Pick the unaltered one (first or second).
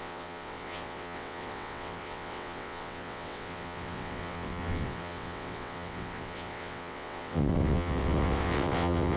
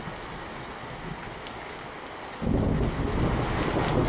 second